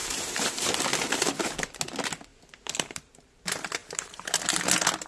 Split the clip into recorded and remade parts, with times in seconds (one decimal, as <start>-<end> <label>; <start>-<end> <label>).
0.0-0.8 remade; 0.8-2.3 recorded; 2.3-3.4 remade; 3.4-3.8 recorded; 3.8-4.4 remade; 4.4-5.1 recorded